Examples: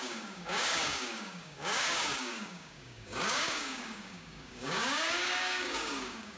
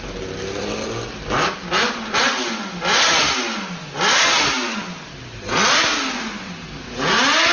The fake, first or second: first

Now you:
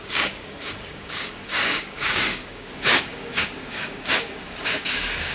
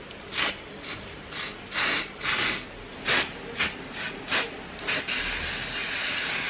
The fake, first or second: first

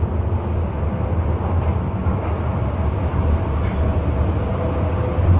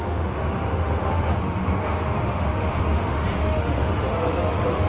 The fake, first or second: second